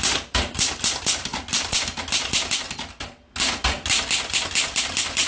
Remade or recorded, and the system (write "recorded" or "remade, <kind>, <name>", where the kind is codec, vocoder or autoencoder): recorded